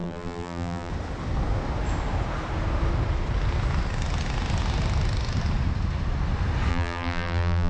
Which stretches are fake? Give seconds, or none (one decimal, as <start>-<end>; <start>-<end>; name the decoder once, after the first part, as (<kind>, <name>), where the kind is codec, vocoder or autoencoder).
0.0-0.9 (vocoder, BigVGAN v2); 6.7-7.7